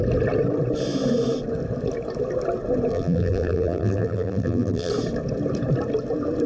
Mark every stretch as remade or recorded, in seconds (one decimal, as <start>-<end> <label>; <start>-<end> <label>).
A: 0.0-2.9 recorded; 2.9-4.9 remade; 4.9-6.5 recorded